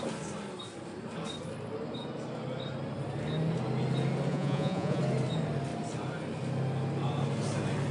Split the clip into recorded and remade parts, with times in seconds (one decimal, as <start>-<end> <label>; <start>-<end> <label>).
0.0-4.3 recorded; 4.3-5.0 remade; 5.0-7.9 recorded